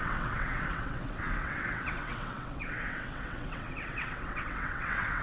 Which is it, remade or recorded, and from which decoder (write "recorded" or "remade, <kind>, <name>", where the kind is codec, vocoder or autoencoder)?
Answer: remade, vocoder, WaveNeXt